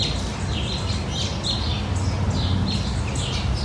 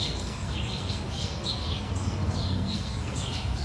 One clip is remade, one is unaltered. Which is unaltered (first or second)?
first